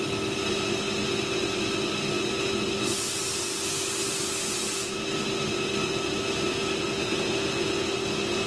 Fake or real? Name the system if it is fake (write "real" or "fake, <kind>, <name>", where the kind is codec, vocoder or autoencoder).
real